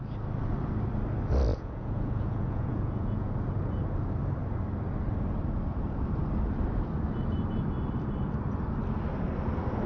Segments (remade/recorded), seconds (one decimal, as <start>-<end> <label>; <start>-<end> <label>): 0.0-1.5 recorded; 1.5-3.3 remade; 3.3-9.9 recorded